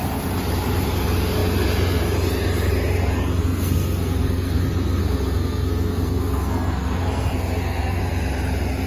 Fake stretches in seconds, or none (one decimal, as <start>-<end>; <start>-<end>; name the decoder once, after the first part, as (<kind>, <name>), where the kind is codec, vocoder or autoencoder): 3.4-4.6 (codec, SNAC); 5.0-8.0